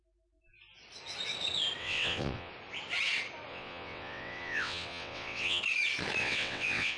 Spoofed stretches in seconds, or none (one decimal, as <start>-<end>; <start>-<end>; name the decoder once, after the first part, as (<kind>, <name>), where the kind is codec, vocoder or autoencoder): 1.8-2.5 (vocoder, WaveNeXt); 3.5-5.6; 6.2-7.0